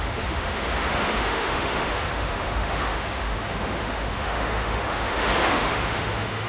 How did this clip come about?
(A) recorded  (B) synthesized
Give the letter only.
B